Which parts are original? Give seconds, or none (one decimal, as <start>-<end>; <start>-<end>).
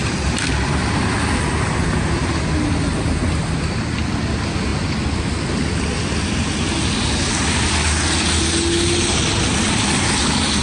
0.0-10.6